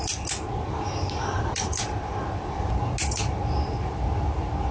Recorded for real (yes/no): yes